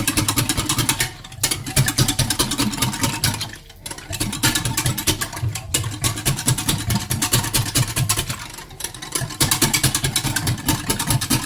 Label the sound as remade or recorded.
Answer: recorded